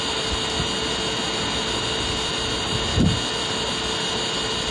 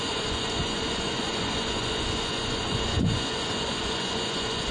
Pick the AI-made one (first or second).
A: second